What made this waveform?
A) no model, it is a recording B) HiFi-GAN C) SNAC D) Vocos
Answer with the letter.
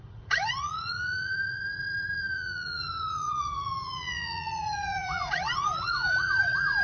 D